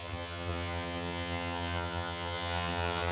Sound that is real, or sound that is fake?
fake